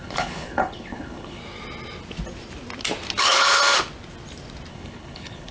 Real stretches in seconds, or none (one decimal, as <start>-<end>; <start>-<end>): 1.4-3.2; 3.6-4.7